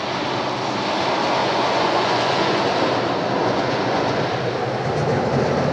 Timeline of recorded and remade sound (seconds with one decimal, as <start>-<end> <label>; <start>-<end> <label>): 0.0-1.4 recorded; 1.4-2.6 remade; 2.6-3.4 recorded; 3.4-4.2 remade; 4.2-5.7 recorded